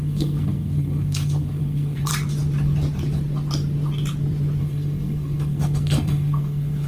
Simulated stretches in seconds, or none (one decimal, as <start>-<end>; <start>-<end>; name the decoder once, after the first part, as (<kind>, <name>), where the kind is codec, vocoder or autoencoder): 0.0-2.1 (codec, SNAC); 4.6-6.9